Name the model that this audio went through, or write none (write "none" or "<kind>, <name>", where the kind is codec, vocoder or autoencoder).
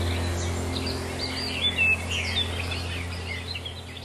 none